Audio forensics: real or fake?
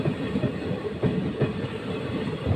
fake